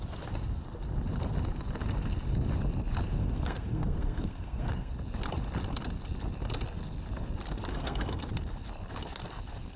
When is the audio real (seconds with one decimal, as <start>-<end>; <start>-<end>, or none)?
0.0-3.2; 4.9-7.7; 8.2-9.8

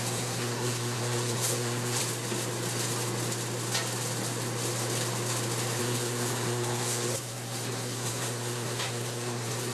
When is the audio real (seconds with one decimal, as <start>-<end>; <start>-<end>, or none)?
2.0-5.8

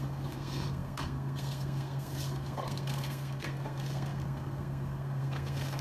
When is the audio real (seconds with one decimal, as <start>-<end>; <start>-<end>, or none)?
none

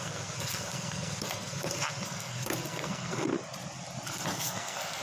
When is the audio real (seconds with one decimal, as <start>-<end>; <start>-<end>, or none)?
3.3-4.1